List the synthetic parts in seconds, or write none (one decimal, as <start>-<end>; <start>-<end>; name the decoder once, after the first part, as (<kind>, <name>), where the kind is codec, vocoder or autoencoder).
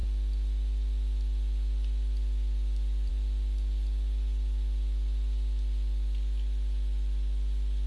none